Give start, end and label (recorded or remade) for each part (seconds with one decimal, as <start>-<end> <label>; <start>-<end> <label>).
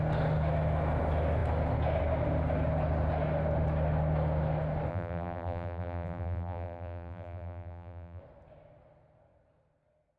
0.0-4.9 recorded; 4.9-8.2 remade; 8.2-10.2 recorded